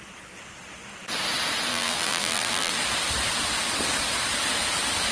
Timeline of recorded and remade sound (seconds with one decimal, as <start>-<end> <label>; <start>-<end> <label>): 0.0-1.7 recorded; 1.7-2.7 remade; 2.7-5.1 recorded